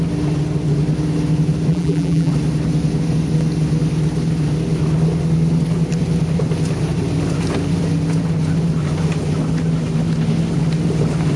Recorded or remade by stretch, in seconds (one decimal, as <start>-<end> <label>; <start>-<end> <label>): 0.0-1.7 recorded; 1.7-2.3 remade; 2.3-11.4 recorded